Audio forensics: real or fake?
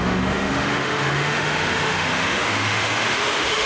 fake